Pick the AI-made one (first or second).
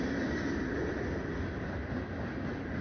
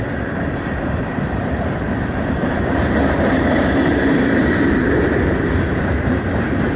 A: second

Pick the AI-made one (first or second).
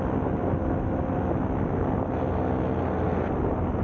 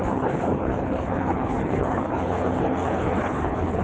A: second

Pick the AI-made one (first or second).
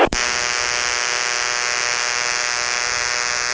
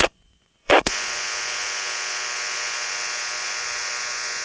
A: second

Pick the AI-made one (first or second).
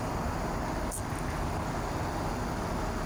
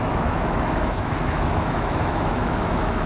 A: second